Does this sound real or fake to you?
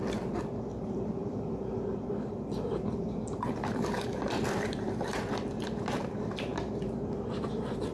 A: fake